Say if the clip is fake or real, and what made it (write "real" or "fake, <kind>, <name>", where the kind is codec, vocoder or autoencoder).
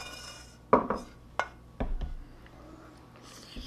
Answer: real